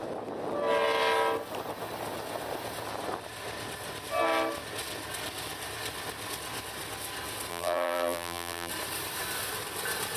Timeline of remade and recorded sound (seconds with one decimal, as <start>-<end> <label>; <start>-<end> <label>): 0.0-7.5 recorded; 7.5-8.7 remade; 8.7-10.2 recorded